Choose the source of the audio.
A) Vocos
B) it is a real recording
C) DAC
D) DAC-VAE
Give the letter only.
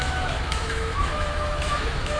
D